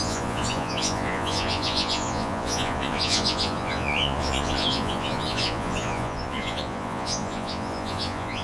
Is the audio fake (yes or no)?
yes